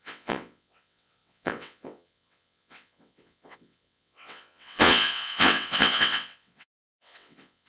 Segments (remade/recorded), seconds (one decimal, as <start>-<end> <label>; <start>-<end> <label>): 0.0-7.7 remade